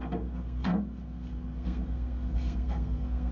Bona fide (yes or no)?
no